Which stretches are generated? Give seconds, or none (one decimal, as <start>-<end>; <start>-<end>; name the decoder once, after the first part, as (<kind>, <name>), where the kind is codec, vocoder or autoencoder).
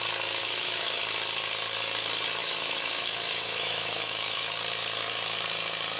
0.4-1.0 (autoencoder, DAC-VAE); 2.4-4.5